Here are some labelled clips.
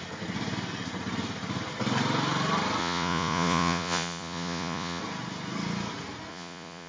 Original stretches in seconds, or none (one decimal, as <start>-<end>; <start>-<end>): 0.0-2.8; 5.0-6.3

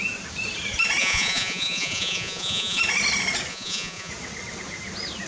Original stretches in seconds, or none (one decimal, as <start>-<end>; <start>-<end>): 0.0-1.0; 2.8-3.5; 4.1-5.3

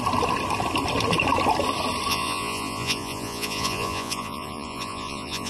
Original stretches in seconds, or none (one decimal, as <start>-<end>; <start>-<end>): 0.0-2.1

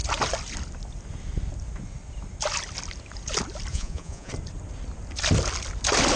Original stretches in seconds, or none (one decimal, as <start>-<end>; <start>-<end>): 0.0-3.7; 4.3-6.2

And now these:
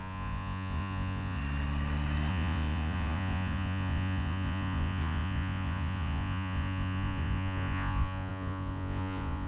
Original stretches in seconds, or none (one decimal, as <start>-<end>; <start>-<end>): 1.4-2.3

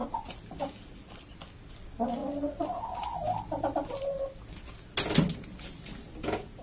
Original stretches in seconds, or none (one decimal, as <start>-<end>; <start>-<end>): 0.0-6.6

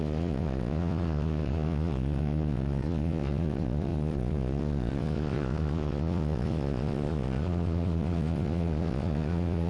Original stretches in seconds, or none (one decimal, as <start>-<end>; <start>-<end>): none

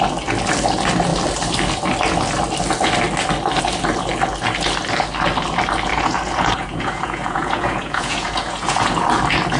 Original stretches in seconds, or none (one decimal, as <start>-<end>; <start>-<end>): 0.0-5.9; 9.0-9.6